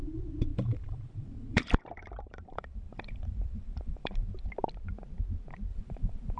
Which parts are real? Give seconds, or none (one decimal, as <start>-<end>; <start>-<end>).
0.0-0.5; 4.3-5.7